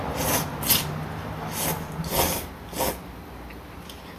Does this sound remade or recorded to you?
recorded